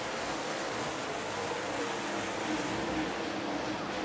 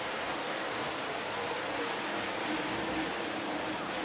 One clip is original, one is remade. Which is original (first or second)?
first